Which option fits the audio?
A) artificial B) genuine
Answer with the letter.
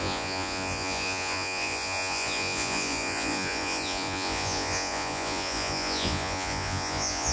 A